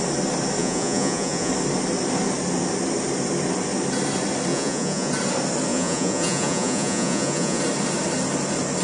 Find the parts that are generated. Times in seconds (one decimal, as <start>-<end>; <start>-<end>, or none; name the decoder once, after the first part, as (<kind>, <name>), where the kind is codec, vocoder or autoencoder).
0.6-1.5 (vocoder, Vocos); 4.5-5.1; 5.7-7.6